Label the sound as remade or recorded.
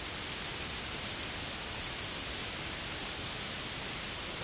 recorded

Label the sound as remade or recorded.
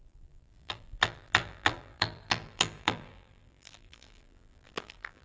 remade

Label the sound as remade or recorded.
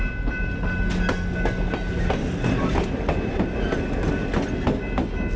recorded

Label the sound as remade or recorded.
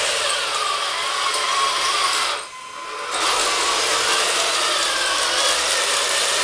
recorded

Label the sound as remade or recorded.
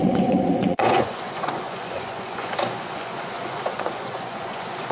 remade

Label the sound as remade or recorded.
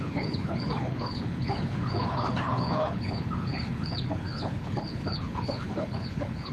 remade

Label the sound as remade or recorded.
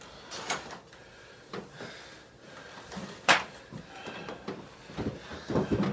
recorded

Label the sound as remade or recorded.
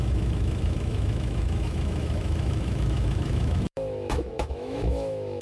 remade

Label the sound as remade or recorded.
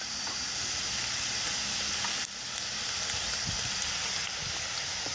recorded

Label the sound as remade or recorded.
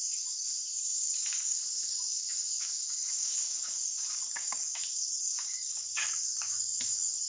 remade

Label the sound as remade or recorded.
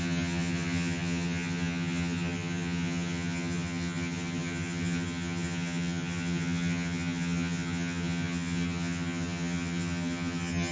remade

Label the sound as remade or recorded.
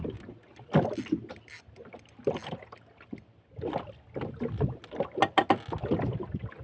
recorded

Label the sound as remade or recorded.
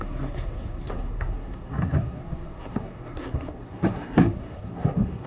remade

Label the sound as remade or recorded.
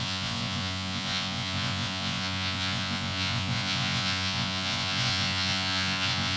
remade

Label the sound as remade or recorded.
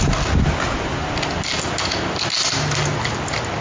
recorded